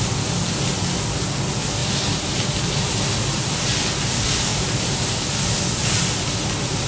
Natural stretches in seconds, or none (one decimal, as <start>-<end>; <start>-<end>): 0.0-1.8; 2.9-4.5; 5.3-6.9